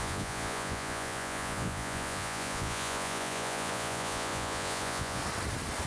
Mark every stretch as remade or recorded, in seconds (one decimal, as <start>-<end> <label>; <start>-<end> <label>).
0.0-5.2 remade; 5.2-5.9 recorded